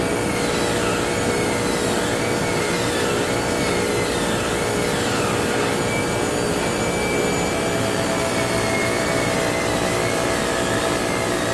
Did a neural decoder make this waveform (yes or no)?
no